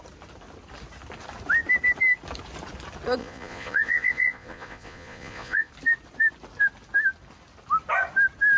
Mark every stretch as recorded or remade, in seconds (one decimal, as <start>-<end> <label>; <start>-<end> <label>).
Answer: 0.0-3.2 recorded; 3.2-5.7 remade; 5.7-8.6 recorded